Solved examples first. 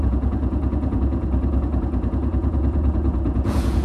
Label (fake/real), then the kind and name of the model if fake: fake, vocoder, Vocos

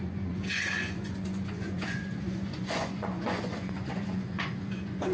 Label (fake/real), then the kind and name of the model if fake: fake, vocoder, Vocos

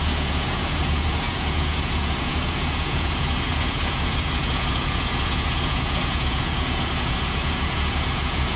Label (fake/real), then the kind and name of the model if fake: fake, vocoder, Vocos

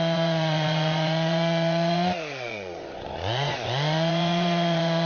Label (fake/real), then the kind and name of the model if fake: fake, vocoder, Vocos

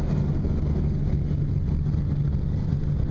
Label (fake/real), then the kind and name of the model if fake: real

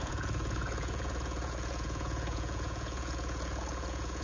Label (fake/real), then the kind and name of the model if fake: fake, vocoder, Vocos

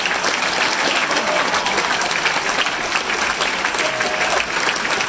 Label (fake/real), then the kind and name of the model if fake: real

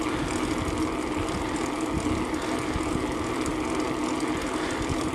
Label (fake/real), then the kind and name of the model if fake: real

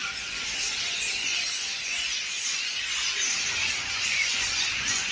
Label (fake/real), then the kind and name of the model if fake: fake, vocoder, Vocos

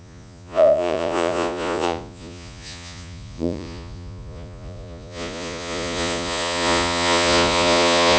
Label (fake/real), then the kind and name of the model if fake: fake, vocoder, Vocos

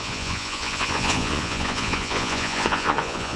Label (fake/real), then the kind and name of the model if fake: fake, vocoder, Vocos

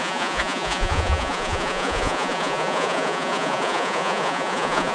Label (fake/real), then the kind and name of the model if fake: fake, vocoder, Vocos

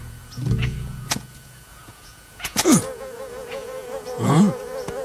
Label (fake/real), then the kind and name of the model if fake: fake, vocoder, Vocos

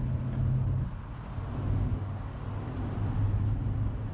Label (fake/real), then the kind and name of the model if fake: real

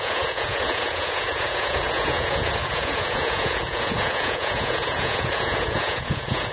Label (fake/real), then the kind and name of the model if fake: fake, vocoder, Vocos